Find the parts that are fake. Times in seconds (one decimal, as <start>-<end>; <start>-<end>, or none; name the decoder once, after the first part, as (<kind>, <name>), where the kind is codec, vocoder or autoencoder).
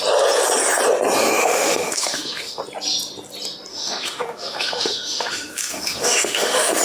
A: 1.4-2.6 (autoencoder, DAC-VAE); 3.7-6.8